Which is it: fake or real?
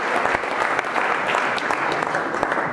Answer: real